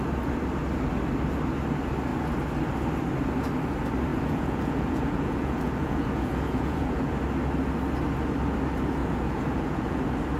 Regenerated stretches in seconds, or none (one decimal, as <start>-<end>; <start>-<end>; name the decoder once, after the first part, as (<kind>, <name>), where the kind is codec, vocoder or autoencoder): 4.1-7.2 (vocoder, Vocos); 9.0-10.0